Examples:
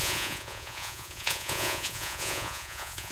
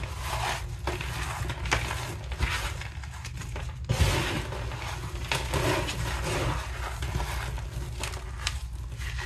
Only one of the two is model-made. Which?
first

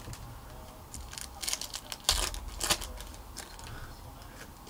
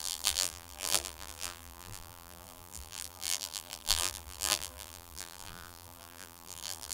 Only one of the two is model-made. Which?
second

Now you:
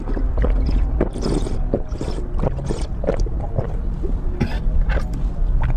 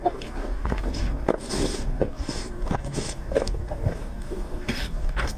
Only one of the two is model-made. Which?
second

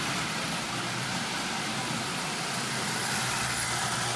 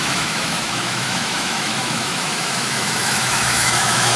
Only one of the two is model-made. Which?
second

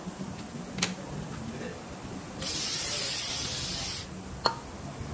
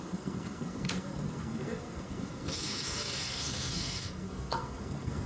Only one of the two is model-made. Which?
second